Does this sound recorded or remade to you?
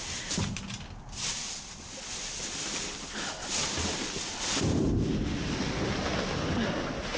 recorded